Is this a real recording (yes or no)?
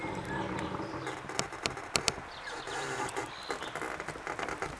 yes